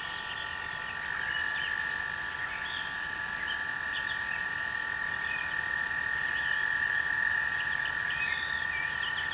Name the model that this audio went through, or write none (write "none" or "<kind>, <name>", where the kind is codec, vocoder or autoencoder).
none